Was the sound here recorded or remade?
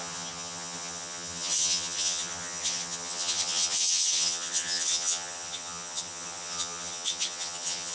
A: remade